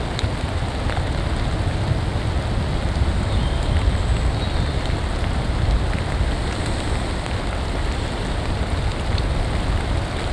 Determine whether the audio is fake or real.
real